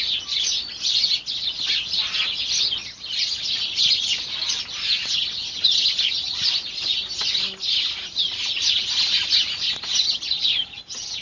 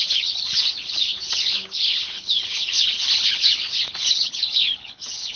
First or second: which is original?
first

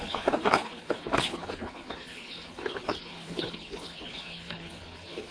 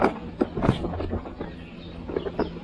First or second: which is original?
second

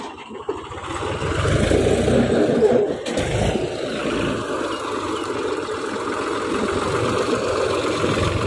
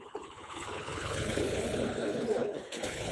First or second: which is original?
first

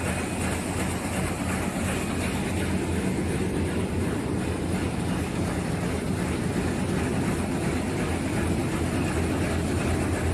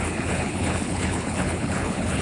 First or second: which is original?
first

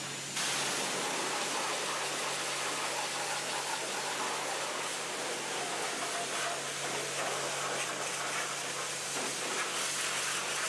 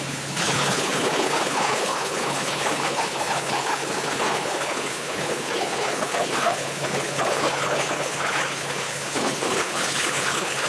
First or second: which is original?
first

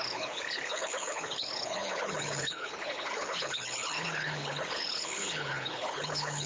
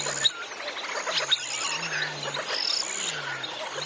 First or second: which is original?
second